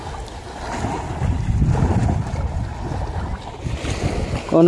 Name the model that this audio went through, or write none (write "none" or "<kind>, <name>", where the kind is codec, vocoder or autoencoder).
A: none